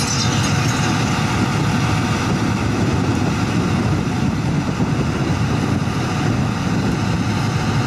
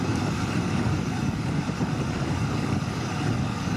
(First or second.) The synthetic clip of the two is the second